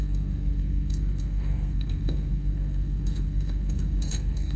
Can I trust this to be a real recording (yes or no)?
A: no